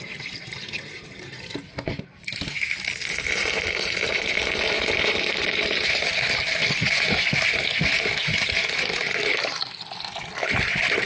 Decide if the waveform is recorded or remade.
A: recorded